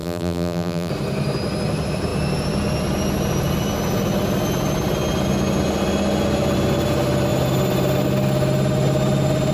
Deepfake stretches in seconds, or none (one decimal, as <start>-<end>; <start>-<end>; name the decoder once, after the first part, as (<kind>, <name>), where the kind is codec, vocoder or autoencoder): 0.0-0.9 (vocoder, BigVGAN v2)